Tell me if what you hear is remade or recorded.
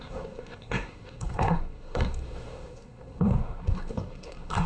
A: remade